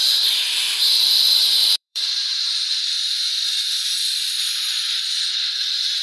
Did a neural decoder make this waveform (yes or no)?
yes